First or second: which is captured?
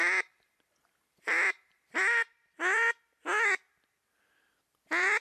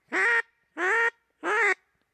second